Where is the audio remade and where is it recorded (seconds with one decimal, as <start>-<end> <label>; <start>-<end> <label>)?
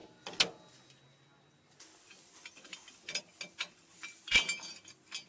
0.0-5.3 recorded